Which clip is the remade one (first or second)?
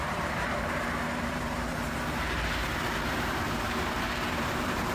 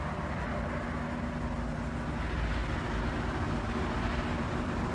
first